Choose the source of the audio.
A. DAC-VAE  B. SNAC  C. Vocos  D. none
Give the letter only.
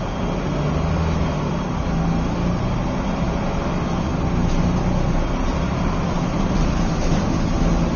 D